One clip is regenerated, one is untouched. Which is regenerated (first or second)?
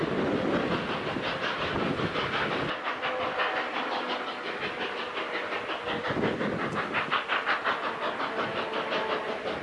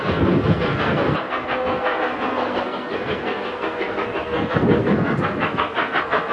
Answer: second